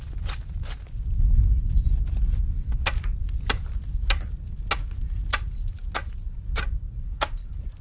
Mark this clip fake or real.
real